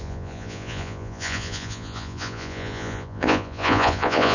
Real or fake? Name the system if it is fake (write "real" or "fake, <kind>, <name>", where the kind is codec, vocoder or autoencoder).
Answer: fake, vocoder, Vocos